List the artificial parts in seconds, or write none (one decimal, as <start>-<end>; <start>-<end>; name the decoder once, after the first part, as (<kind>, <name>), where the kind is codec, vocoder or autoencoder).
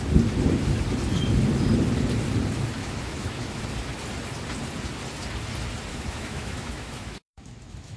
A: 2.8-3.6 (autoencoder, DAC-VAE); 5.9-8.0